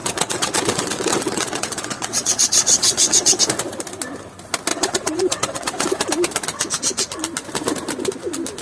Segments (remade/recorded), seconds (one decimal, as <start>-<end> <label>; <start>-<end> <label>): 0.0-3.4 remade; 3.4-4.7 recorded; 4.7-5.9 remade; 5.9-8.6 recorded